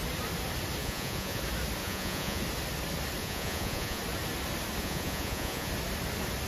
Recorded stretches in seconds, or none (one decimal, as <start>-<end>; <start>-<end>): 0.0-0.8; 1.4-1.8; 2.4-3.2; 4.0-4.8; 5.7-6.5